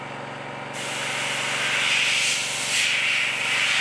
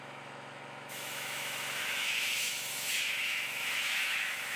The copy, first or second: second